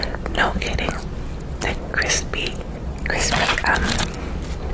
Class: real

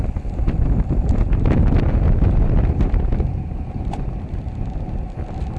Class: real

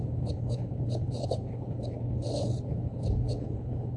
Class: fake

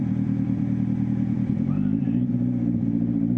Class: fake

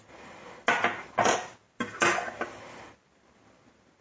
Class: real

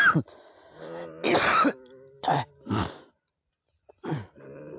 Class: real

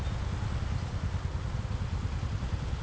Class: real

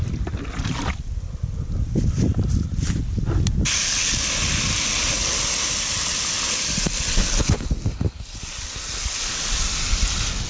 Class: real